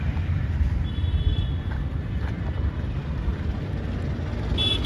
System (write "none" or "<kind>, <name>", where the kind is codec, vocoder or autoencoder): none